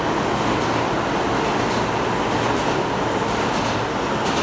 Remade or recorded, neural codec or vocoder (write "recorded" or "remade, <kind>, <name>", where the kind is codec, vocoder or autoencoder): recorded